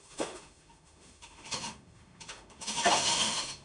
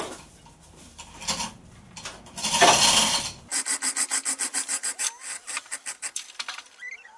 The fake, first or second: first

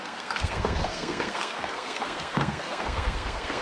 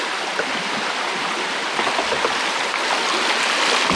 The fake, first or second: first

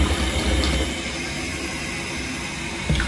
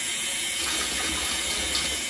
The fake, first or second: second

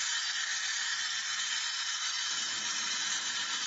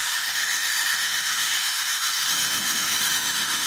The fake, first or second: second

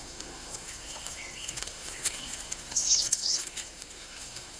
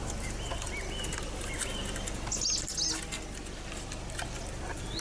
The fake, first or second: first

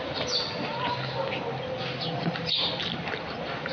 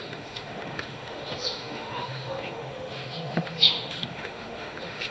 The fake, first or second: second